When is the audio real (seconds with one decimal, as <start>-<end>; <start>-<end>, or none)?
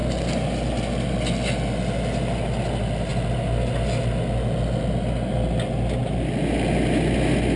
0.0-7.6